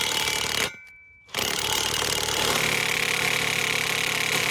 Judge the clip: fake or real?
real